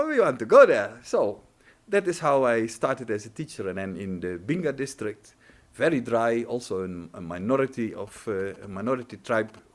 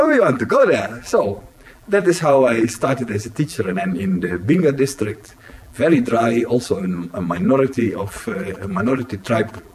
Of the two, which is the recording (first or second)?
first